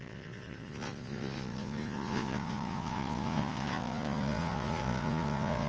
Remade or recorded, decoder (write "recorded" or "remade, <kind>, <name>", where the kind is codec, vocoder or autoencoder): remade, vocoder, Vocos